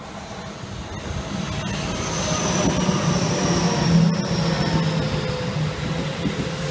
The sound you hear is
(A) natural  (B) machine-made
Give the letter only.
A